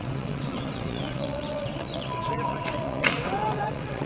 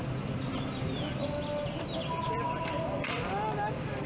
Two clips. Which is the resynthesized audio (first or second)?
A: first